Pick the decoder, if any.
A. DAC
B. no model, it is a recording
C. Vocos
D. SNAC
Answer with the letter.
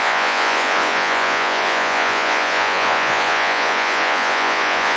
C